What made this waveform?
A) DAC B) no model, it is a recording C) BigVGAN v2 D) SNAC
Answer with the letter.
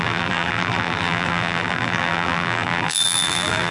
C